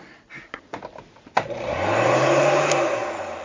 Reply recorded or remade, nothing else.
recorded